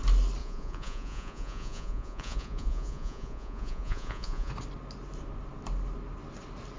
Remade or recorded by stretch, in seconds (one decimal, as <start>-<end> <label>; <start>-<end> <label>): 0.0-0.4 recorded; 0.4-4.5 remade; 4.5-6.8 recorded